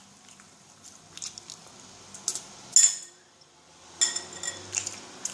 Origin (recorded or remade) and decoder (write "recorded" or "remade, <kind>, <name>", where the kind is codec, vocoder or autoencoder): recorded